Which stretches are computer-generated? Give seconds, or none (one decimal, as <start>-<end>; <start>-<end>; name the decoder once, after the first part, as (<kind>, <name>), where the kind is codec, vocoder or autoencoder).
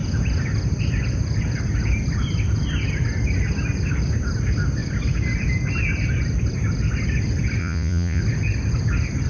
7.6-8.2 (vocoder, Vocos)